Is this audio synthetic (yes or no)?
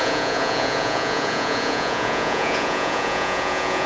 yes